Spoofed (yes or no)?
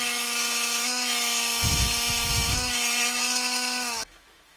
yes